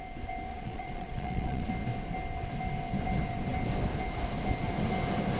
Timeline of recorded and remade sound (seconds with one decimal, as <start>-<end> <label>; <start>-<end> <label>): 0.0-0.5 recorded; 0.5-1.7 remade; 1.7-5.4 recorded